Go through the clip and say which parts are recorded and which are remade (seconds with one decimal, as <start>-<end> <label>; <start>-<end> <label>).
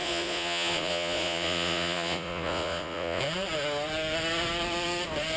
0.0-3.2 remade; 3.2-5.4 recorded